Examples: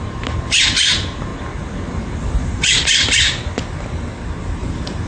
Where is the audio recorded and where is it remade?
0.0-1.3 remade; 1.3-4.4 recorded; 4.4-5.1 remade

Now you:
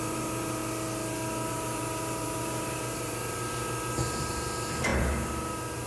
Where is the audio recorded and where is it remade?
0.0-0.6 remade; 0.6-1.5 recorded; 1.5-5.9 remade